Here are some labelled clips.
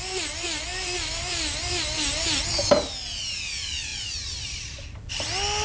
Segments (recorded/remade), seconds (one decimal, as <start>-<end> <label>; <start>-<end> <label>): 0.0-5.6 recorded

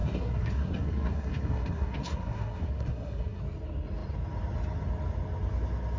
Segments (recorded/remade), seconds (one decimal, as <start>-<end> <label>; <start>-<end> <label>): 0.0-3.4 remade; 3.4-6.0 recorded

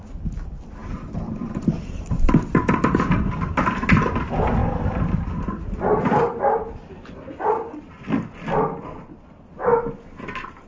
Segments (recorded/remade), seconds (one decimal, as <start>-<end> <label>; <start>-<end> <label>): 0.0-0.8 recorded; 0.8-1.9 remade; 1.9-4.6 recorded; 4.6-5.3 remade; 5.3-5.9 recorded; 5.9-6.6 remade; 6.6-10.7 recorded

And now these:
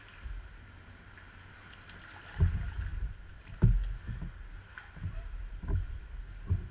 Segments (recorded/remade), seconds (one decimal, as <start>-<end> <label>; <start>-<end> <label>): 0.0-6.7 recorded

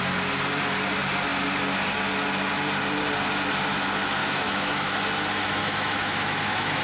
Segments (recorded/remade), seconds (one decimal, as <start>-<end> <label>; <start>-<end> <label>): 0.0-4.2 recorded; 4.2-4.9 remade; 4.9-5.6 recorded; 5.6-6.8 remade

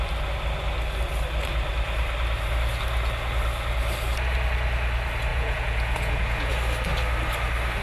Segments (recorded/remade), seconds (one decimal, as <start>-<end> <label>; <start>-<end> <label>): 0.0-5.3 recorded; 5.3-6.5 remade; 6.5-7.8 recorded